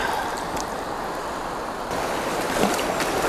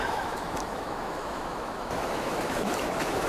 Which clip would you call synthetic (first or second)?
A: second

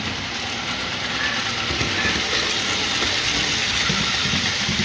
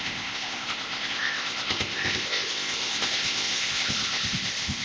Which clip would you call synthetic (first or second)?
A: second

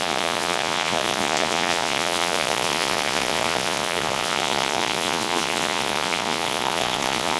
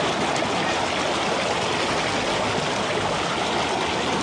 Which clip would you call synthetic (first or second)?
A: first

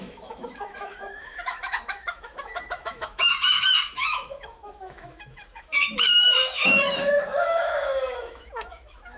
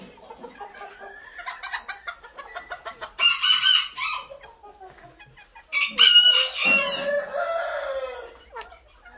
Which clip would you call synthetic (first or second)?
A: first